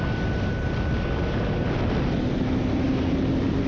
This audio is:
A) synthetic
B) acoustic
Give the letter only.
B